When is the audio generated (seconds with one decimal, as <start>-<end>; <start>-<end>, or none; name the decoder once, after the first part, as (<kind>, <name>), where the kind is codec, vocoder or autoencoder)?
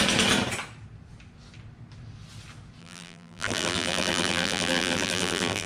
2.8-5.7 (vocoder, BigVGAN v2)